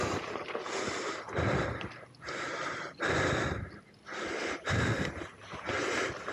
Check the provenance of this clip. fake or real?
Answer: real